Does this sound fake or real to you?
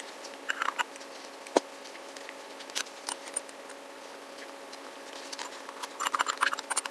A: real